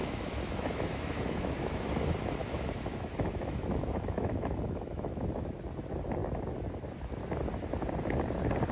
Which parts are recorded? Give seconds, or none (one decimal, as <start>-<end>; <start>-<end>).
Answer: 1.9-2.4; 5.5-8.7